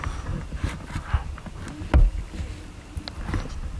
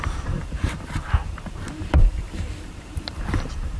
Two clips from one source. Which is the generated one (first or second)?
second